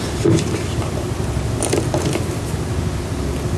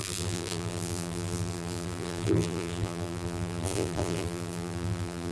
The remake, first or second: second